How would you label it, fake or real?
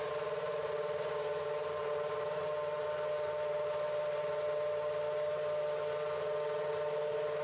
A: real